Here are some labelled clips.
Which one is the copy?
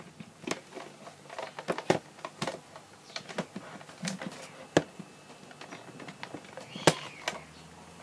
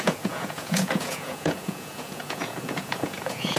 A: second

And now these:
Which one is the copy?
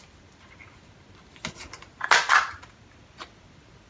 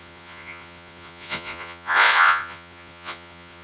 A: second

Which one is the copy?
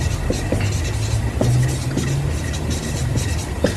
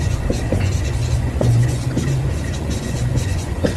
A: second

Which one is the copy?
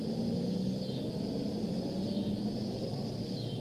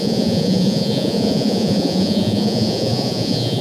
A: second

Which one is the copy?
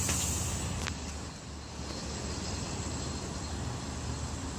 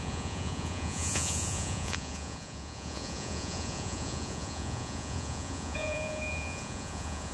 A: second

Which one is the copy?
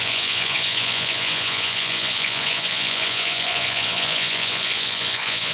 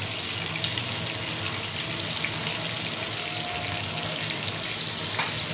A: first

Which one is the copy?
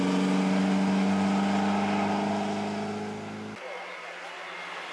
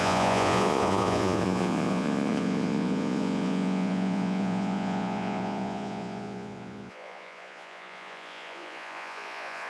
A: second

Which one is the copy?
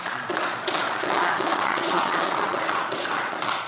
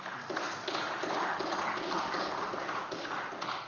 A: first